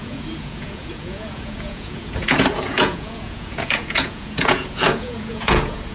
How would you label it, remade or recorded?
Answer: remade